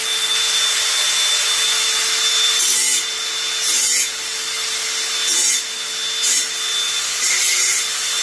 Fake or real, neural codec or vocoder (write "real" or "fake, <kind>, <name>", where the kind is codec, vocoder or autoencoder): real